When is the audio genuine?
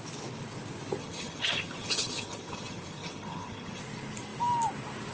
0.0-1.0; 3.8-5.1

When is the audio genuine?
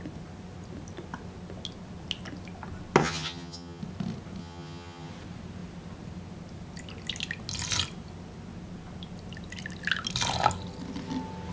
0.0-3.0; 3.8-4.4; 5.1-11.5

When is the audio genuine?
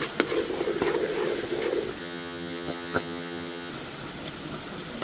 0.0-2.0; 3.7-5.0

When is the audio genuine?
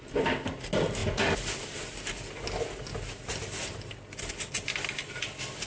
0.0-5.7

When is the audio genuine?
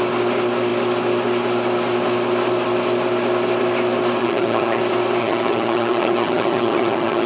0.0-4.2; 4.8-5.2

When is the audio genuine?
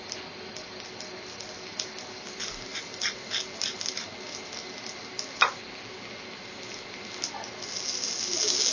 0.0-8.7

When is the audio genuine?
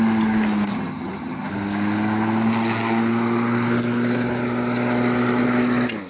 0.0-0.7; 1.5-6.1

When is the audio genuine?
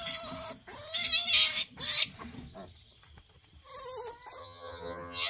0.0-4.4